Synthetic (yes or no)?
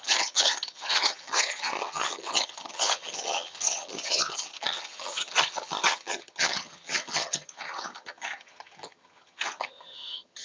yes